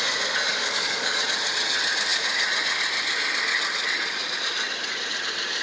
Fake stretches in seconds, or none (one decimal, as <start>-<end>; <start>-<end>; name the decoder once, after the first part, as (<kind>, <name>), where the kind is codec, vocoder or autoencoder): 0.5-1.2 (codec, DAC)